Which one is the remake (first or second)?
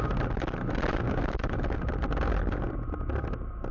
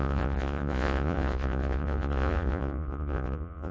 second